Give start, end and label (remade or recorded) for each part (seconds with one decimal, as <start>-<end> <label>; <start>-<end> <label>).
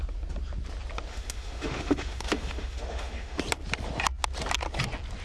0.0-1.1 recorded; 1.1-3.4 remade; 3.4-5.2 recorded